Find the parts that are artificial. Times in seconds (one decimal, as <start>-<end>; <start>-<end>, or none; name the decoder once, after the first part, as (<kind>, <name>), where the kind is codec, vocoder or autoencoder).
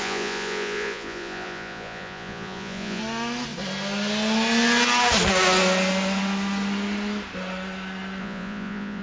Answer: 0.0-3.0 (vocoder, Vocos); 8.2-9.0